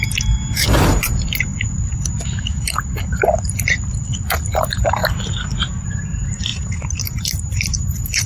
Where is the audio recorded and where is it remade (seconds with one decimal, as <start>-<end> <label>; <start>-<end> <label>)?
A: 0.0-1.5 remade; 1.5-4.6 recorded; 4.6-5.0 remade; 5.0-5.9 recorded; 5.9-8.3 remade